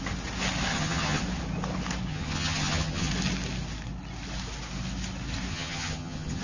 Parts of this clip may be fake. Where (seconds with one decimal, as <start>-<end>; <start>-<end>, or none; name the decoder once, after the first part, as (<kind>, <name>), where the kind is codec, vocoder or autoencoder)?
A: 0.7-1.2 (vocoder, HiFi-GAN); 2.1-3.1; 5.5-6.4